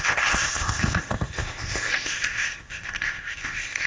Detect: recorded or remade remade